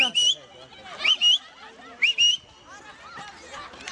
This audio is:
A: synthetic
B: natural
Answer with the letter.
B